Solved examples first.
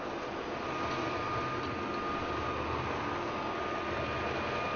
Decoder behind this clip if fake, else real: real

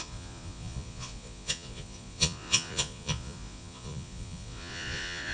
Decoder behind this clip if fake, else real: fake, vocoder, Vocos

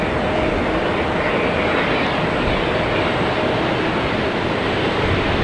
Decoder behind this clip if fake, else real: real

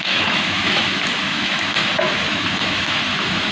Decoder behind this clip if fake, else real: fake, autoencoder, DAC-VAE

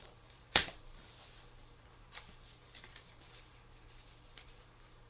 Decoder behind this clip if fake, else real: fake, vocoder, BigVGAN v2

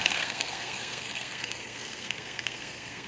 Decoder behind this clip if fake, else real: fake, codec, SNAC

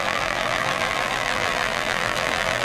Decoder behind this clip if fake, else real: fake, vocoder, BigVGAN v2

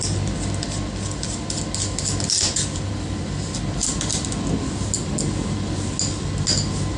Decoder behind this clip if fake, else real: real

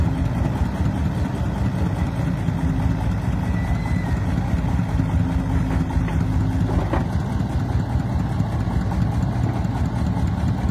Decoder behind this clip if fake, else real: real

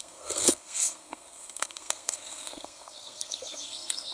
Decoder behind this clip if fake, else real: fake, codec, SNAC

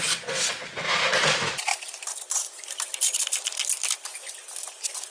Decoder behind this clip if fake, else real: fake, vocoder, BigVGAN v2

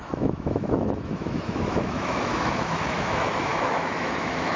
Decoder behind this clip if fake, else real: fake, autoencoder, DAC-VAE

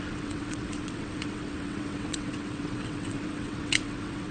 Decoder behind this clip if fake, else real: fake, vocoder, WaveNeXt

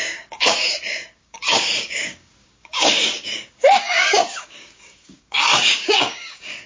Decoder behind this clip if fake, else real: fake, codec, DAC